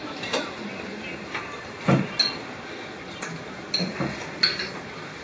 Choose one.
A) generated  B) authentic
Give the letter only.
B